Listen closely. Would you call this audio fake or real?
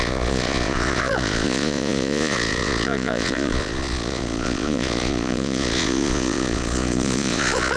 fake